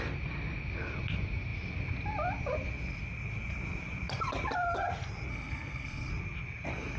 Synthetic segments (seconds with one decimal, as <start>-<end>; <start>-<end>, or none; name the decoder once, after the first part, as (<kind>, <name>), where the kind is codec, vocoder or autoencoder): 5.3-6.1 (codec, SNAC)